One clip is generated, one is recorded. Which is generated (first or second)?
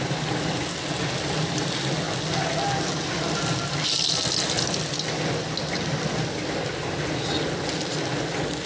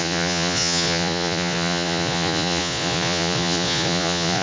second